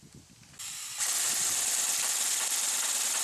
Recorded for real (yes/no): yes